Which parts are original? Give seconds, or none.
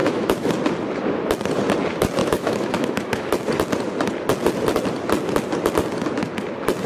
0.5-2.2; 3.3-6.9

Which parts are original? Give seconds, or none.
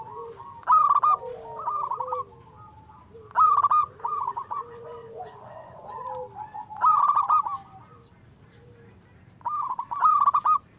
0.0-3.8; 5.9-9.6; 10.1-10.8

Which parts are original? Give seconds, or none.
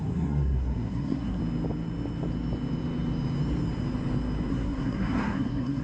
1.4-4.5